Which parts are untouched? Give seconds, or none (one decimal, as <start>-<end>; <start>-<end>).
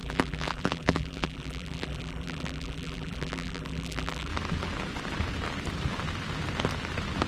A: 4.3-7.3